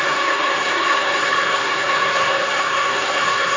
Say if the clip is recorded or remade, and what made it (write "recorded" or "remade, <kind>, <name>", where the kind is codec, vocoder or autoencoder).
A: remade, codec, SNAC